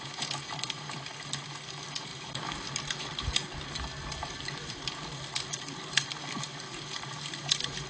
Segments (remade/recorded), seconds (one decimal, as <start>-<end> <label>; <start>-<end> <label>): 0.0-7.9 recorded